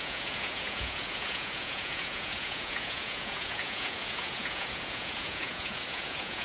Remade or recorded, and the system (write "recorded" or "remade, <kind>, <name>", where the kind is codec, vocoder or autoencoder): remade, vocoder, Vocos